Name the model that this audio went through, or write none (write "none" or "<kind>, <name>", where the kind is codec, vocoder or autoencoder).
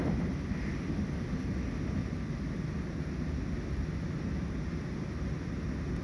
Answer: none